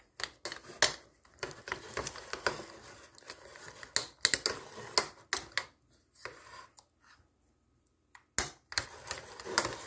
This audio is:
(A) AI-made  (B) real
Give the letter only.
B